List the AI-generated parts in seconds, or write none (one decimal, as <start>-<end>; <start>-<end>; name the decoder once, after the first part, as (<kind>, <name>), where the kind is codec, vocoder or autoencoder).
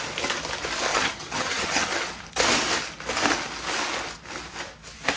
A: 0.9-2.0 (vocoder, HiFi-GAN)